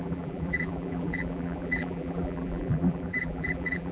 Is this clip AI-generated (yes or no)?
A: yes